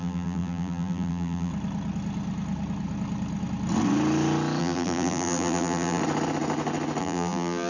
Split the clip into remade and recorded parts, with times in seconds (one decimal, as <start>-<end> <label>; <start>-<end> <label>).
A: 0.0-1.5 remade; 1.5-4.6 recorded; 4.6-6.0 remade; 6.0-7.0 recorded; 7.0-7.7 remade